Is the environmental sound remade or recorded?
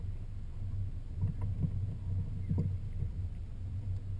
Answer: recorded